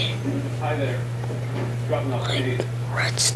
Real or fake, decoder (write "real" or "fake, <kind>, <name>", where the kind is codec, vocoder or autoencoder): real